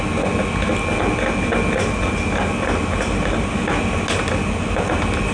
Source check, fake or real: real